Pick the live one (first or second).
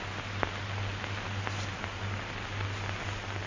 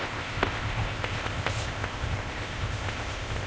first